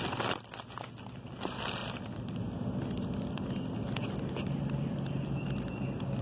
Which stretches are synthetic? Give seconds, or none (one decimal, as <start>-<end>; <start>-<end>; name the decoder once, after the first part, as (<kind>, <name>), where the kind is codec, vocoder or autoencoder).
none

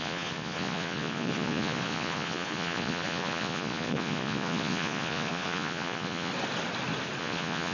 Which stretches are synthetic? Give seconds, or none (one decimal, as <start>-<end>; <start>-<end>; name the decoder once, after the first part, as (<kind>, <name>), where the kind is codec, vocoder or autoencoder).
0.0-6.3 (vocoder, Vocos); 7.2-7.7

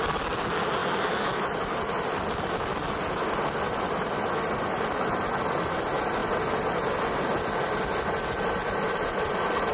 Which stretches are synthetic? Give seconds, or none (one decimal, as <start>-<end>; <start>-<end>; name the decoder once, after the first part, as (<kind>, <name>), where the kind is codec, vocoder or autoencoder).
none

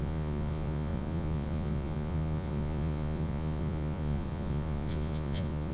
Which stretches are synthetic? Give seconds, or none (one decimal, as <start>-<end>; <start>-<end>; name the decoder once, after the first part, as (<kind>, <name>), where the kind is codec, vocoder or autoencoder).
0.0-5.7 (vocoder, Vocos)

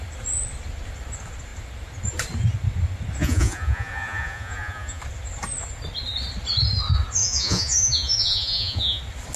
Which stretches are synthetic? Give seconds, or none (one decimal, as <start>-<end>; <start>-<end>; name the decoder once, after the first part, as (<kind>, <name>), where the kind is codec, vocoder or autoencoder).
3.2-5.0 (vocoder, Vocos); 7.2-9.0

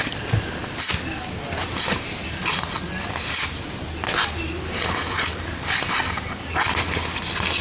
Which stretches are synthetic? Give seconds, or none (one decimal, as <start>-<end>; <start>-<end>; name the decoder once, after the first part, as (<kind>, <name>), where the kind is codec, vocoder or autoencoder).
none

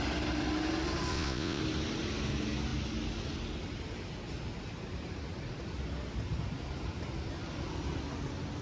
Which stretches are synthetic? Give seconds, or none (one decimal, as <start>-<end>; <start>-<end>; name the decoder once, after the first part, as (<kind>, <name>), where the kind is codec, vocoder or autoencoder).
1.1-1.6 (vocoder, Vocos)